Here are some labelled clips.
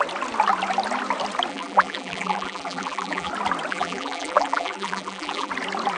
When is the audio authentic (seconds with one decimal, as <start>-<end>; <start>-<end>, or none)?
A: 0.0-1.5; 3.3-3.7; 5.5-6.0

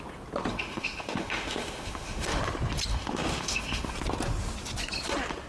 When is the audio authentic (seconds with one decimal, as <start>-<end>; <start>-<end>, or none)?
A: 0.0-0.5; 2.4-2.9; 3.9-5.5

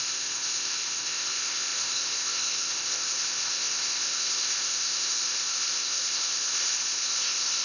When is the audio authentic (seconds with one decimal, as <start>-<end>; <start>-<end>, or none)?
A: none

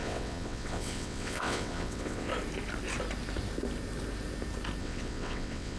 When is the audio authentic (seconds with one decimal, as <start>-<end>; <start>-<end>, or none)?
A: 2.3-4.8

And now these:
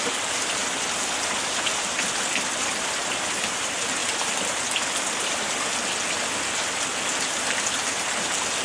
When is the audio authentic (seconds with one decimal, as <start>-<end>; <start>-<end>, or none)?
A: 0.0-8.6